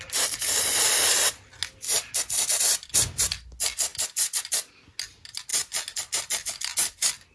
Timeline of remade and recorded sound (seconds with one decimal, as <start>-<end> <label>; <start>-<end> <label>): 0.0-7.3 recorded